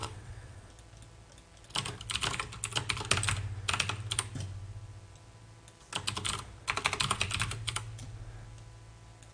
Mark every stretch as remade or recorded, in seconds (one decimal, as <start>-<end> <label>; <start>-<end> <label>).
0.0-0.7 remade; 0.7-9.3 recorded